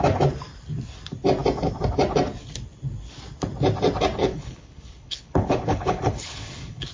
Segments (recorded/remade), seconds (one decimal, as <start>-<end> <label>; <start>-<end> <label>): 0.0-4.2 recorded; 4.2-6.9 remade

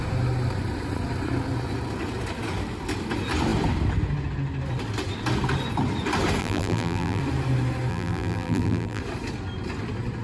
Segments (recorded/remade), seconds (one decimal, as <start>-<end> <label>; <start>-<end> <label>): 0.0-6.4 recorded; 6.4-7.2 remade; 7.2-7.9 recorded; 7.9-9.0 remade; 9.0-10.2 recorded

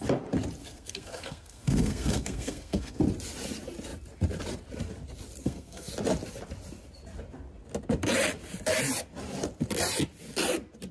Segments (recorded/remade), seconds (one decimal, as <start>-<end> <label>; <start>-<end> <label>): 0.0-0.6 recorded; 0.6-3.0 remade; 3.0-5.4 recorded; 5.4-5.9 remade; 5.9-10.9 recorded

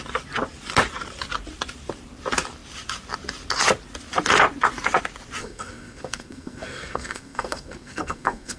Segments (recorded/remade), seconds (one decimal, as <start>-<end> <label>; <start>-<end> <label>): 0.0-5.4 recorded; 5.4-8.6 remade

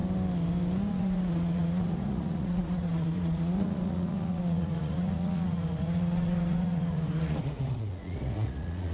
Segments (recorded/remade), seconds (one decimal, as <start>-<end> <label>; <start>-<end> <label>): 0.0-0.9 recorded; 0.9-8.9 remade

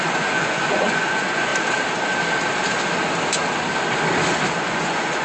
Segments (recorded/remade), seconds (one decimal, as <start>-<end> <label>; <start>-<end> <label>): 0.0-1.5 remade; 1.5-4.6 recorded; 4.6-5.2 remade